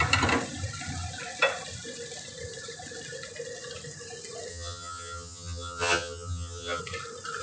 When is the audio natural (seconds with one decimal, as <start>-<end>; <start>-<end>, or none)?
0.0-4.5; 6.8-7.4